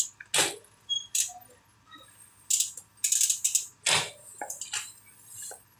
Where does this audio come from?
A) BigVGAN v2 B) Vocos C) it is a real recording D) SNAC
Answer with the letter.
C